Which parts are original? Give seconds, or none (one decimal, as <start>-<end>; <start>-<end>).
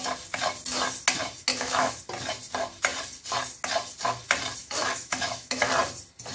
0.0-1.5; 2.0-4.6; 5.7-6.3